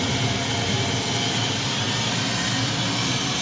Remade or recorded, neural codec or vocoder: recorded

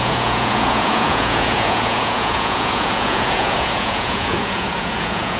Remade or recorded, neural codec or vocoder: remade, vocoder, Vocos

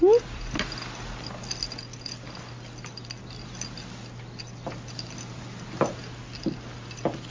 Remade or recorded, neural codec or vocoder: recorded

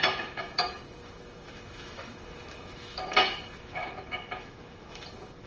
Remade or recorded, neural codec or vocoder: remade, autoencoder, DAC-VAE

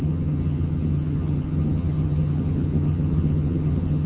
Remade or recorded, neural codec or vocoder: remade, vocoder, HiFi-GAN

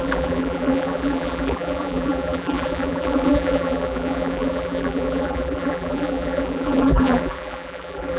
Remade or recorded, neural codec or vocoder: remade, vocoder, BigVGAN v2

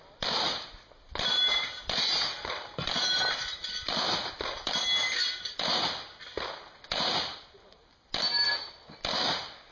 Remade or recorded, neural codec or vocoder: recorded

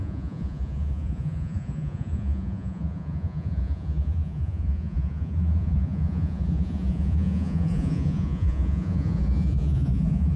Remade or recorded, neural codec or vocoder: remade, vocoder, Vocos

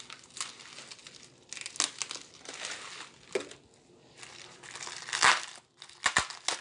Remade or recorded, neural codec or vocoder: recorded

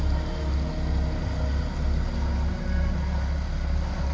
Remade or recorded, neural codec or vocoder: recorded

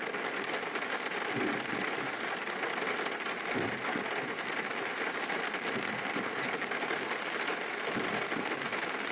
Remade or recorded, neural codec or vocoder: recorded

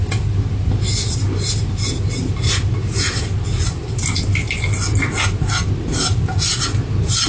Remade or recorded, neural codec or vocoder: recorded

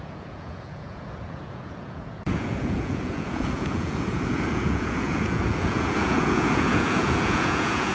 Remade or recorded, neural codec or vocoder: remade, vocoder, Vocos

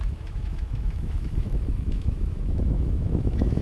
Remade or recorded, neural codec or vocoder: remade, autoencoder, DAC-VAE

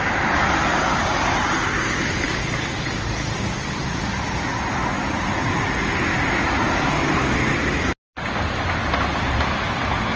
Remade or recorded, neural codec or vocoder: recorded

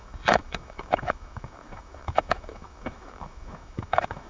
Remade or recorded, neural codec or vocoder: remade, autoencoder, DAC-VAE